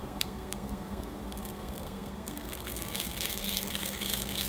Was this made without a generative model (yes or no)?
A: no